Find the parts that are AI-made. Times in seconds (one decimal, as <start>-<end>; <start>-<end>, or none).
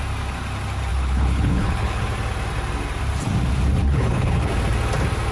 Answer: 0.9-2.0; 3.8-4.5